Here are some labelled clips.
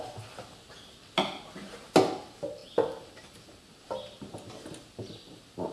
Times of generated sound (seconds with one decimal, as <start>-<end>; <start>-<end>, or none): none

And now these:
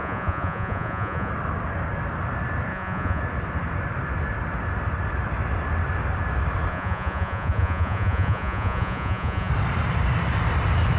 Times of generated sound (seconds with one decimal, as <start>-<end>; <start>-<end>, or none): 0.0-1.3; 2.7-3.2; 6.7-9.5

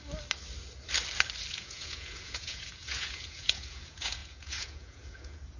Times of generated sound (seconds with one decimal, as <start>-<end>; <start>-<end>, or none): 1.5-5.6

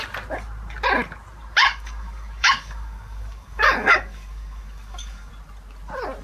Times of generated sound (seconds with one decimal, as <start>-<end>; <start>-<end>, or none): 1.6-5.3